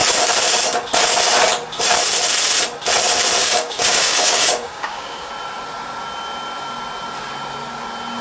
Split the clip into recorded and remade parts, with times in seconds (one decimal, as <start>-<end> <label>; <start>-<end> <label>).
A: 0.0-3.4 recorded; 3.4-5.3 remade; 5.3-8.2 recorded